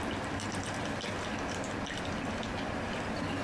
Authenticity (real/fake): real